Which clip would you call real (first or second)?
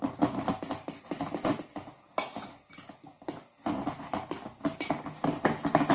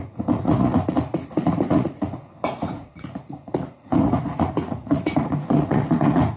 first